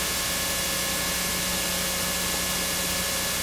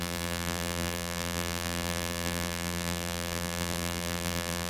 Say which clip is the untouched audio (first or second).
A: first